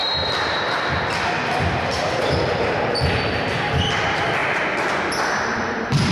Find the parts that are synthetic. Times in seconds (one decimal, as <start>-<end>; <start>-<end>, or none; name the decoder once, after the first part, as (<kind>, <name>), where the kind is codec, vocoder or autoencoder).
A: 1.4-4.4 (vocoder, BigVGAN v2); 4.9-6.1